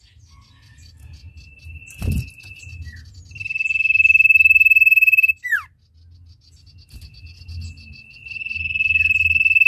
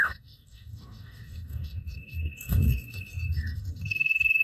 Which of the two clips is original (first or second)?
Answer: first